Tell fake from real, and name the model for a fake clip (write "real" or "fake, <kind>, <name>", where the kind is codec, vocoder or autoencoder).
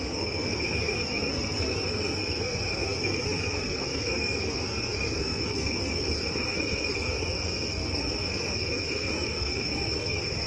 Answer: fake, codec, SNAC